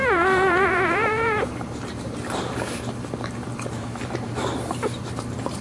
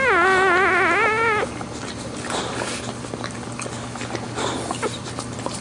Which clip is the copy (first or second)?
first